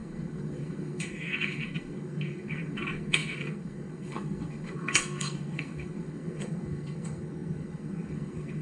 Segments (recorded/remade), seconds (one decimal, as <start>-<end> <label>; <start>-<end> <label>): 0.0-8.6 remade